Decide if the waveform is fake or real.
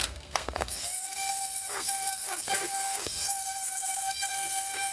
fake